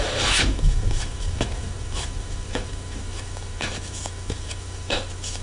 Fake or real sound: fake